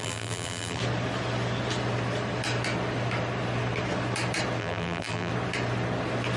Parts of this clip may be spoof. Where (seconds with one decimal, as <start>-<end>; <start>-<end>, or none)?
0.0-0.8; 4.6-5.3